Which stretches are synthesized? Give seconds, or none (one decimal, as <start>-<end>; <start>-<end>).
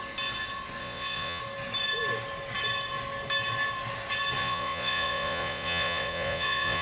0.8-1.4; 4.4-6.8